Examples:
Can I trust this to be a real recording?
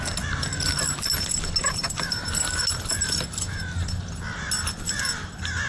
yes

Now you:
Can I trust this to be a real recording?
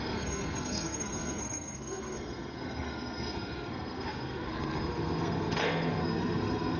no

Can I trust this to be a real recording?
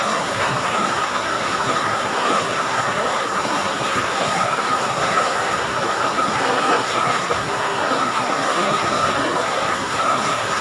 no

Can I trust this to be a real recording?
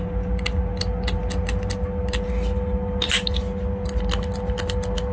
yes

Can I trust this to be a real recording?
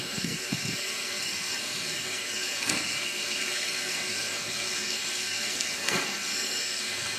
no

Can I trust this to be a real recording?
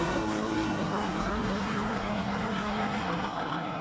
no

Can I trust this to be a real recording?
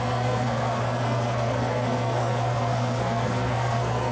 no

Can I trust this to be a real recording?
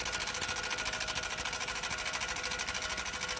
yes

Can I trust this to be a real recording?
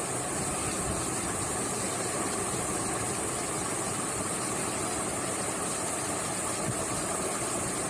yes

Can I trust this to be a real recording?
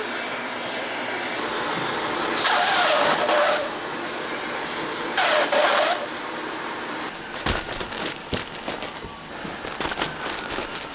yes